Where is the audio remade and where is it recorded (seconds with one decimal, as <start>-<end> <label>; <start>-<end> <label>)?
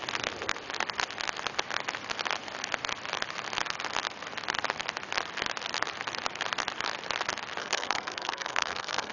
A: 0.0-7.6 recorded; 7.6-9.1 remade